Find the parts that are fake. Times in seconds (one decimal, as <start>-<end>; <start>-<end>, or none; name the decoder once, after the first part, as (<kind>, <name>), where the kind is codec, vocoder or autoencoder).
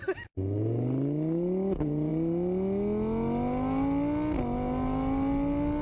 none